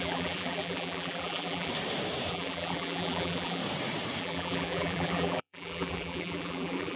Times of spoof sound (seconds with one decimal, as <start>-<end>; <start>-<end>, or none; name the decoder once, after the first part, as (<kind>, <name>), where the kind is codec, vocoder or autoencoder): 0.0-1.7 (vocoder, BigVGAN v2); 2.3-3.6; 4.2-7.0